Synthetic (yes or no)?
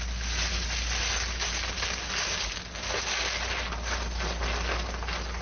no